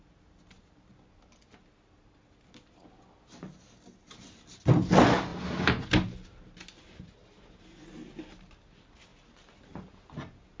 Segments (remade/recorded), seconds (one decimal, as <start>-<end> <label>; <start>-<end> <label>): 0.0-10.6 recorded